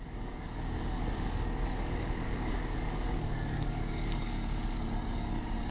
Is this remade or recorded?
remade